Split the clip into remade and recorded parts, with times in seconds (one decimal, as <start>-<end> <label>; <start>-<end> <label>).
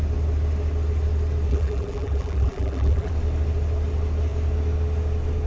0.0-1.5 recorded; 1.5-3.1 remade; 3.1-5.5 recorded